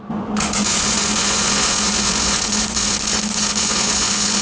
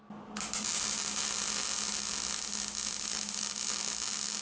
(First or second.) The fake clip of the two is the first